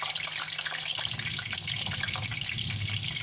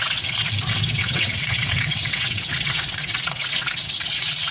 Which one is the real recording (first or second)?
first